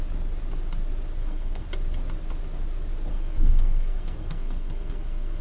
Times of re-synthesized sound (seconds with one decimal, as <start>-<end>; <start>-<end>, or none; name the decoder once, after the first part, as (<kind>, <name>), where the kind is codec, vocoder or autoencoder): 1.2-1.7 (codec, SNAC); 3.1-5.4